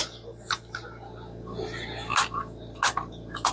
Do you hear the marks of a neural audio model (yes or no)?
no